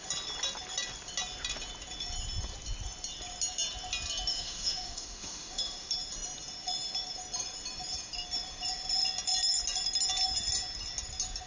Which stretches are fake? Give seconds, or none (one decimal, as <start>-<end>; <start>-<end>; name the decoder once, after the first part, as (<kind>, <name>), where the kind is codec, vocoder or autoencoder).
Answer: 4.3-5.9 (autoencoder, DAC-VAE)